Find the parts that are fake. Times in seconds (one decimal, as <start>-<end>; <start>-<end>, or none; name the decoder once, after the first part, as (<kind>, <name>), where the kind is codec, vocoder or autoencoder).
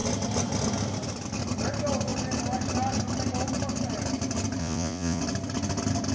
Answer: 4.6-5.2 (vocoder, Vocos)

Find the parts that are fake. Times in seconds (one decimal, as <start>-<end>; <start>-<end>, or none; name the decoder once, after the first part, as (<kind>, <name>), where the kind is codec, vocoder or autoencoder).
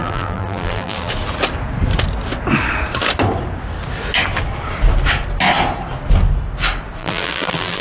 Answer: 0.0-1.1 (vocoder, BigVGAN v2); 7.0-7.8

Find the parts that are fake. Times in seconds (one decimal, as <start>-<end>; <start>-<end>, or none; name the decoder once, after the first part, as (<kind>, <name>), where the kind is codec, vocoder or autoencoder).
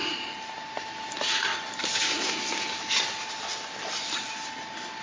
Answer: none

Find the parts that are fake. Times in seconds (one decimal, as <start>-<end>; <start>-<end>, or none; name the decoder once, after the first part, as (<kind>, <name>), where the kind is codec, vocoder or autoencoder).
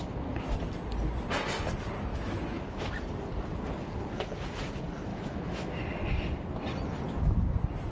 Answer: 2.1-2.9 (autoencoder, DAC-VAE); 5.1-5.7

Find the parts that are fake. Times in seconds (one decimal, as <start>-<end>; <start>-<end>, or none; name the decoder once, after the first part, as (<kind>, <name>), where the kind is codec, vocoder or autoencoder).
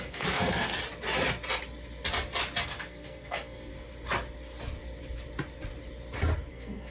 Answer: 0.0-0.7 (codec, SNAC); 2.6-3.7; 6.5-6.9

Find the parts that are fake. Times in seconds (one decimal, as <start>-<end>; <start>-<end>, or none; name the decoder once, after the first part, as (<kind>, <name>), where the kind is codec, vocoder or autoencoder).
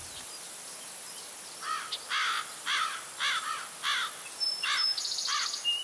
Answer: none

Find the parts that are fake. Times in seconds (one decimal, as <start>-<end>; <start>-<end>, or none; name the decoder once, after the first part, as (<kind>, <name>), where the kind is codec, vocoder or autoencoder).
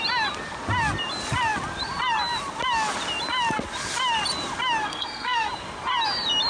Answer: 4.8-5.5 (codec, SNAC)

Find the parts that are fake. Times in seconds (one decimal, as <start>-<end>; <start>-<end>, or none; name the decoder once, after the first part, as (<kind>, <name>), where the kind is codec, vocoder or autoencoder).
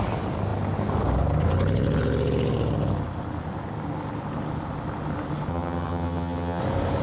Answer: 5.5-6.6 (vocoder, HiFi-GAN)